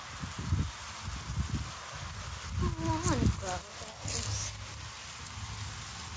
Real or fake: real